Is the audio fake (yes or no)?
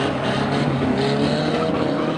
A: no